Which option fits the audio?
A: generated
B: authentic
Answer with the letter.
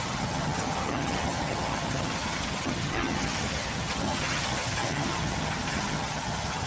A